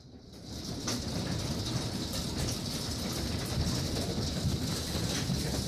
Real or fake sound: fake